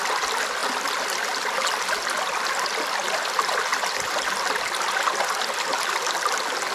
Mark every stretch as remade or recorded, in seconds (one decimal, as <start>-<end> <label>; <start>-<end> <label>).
0.0-6.7 recorded

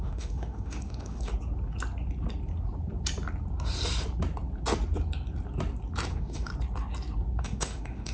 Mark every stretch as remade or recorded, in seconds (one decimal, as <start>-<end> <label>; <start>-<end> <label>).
0.0-1.3 remade; 1.3-6.1 recorded; 6.1-6.5 remade; 6.5-7.4 recorded; 7.4-8.1 remade

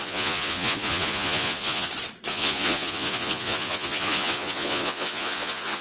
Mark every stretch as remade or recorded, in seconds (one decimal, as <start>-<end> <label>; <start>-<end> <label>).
0.0-1.9 remade; 1.9-2.3 recorded; 2.3-5.8 remade

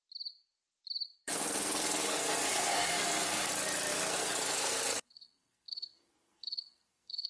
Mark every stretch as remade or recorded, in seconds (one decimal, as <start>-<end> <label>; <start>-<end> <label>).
0.0-1.2 recorded; 1.2-3.5 remade; 3.5-3.9 recorded; 3.9-7.3 remade